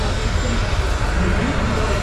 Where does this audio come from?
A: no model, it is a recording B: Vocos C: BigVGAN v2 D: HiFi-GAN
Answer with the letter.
A